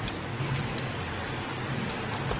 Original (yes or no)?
yes